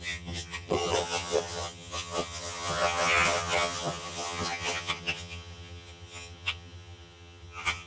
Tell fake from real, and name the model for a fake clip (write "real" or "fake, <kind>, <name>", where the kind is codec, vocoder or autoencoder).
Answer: fake, vocoder, HiFi-GAN